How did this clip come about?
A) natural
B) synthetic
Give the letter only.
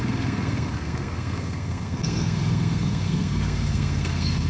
B